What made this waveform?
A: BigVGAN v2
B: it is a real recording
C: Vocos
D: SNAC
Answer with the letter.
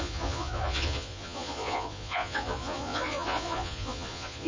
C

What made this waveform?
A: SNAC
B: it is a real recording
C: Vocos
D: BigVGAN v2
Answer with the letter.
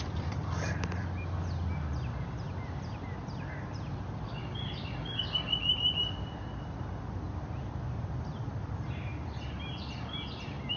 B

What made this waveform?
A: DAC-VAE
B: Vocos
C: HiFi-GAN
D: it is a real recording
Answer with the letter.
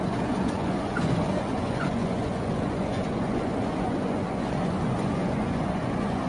B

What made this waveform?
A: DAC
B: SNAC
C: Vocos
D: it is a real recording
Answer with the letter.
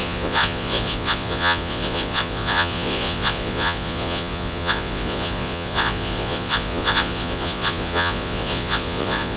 C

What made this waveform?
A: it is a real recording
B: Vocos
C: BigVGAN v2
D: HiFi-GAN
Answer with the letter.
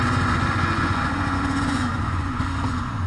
B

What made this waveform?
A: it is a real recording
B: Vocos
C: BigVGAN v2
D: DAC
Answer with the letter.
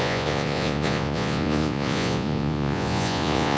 B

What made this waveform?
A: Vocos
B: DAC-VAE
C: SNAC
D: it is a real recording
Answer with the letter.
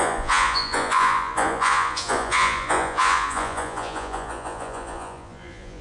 A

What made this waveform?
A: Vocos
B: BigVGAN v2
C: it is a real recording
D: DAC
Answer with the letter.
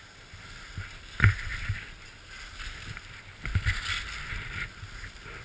C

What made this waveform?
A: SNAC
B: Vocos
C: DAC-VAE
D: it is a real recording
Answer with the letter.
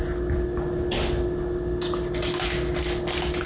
D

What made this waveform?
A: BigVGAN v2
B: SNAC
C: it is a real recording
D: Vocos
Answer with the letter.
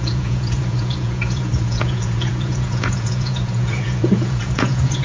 D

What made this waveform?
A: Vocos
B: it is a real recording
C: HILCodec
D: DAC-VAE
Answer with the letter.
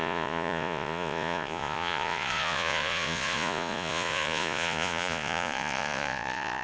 A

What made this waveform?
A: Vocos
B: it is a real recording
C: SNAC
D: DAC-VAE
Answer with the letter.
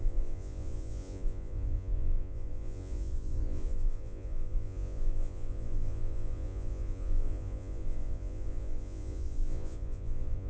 A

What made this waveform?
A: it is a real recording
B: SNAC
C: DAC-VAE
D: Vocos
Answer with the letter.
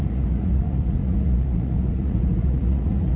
D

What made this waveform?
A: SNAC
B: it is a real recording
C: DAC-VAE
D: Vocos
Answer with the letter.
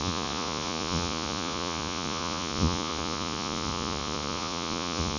D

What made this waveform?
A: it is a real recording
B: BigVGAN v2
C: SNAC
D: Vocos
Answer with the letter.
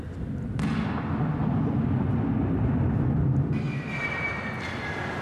A